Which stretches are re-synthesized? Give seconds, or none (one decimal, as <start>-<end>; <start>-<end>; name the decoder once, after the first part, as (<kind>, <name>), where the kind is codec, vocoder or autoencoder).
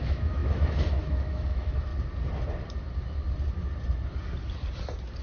0.0-1.9 (autoencoder, DAC-VAE)